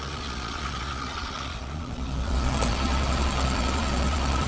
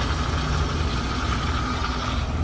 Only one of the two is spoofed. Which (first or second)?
first